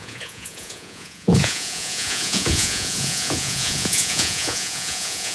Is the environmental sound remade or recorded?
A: remade